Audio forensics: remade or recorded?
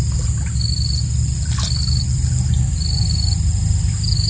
recorded